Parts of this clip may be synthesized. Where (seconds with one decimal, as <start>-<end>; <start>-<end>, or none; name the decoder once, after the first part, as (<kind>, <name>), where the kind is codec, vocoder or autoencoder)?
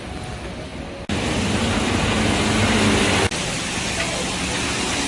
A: none